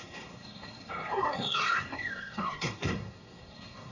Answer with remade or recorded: remade